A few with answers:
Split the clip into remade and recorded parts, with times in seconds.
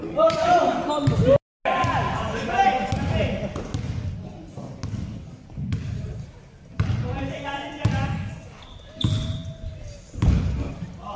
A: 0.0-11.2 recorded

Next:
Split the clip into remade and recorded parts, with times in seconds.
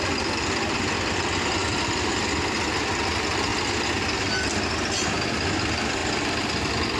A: 0.0-7.0 recorded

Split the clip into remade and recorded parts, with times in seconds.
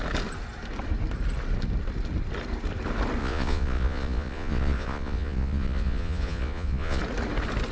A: 0.0-3.2 recorded; 3.2-7.0 remade; 7.0-7.7 recorded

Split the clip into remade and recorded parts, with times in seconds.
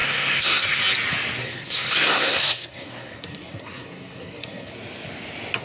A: 0.0-0.8 remade; 0.8-1.4 recorded; 1.4-4.7 remade; 4.7-5.6 recorded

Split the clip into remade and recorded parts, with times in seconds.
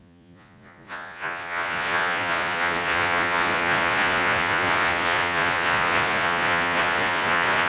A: 0.0-7.7 remade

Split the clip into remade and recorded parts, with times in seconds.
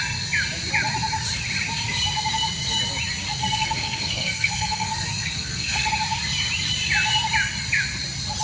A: 0.0-3.4 recorded; 3.4-5.9 remade; 5.9-8.4 recorded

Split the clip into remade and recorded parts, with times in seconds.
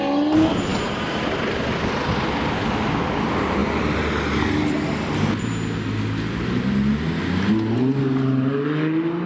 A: 0.0-9.3 recorded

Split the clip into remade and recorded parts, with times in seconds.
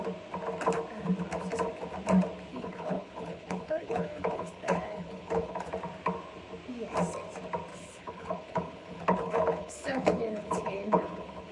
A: 0.0-2.5 recorded; 2.5-5.7 remade; 5.7-7.7 recorded; 7.7-11.5 remade